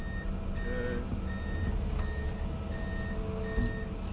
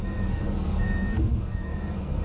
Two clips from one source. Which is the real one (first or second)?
first